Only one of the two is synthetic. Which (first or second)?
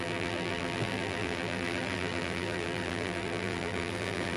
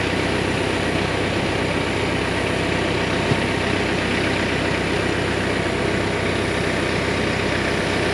first